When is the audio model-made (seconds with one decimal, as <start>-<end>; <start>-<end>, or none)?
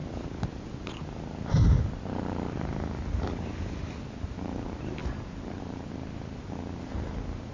none